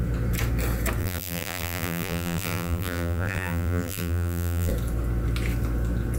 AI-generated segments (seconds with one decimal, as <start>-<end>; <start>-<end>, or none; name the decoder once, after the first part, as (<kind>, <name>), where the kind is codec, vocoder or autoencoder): 1.0-4.7 (vocoder, BigVGAN v2)